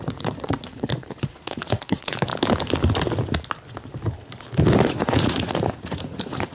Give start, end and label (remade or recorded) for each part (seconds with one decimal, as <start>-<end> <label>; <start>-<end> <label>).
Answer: 0.0-2.3 remade; 2.3-4.9 recorded; 4.9-6.5 remade